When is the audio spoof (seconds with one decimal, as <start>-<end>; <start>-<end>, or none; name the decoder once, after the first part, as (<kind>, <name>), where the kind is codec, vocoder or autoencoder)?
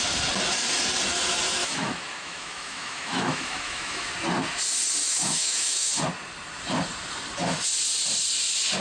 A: 1.6-4.1 (autoencoder, DAC-VAE); 5.0-5.9